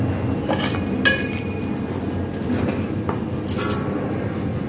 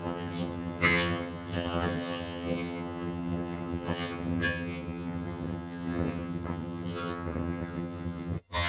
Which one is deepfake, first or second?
second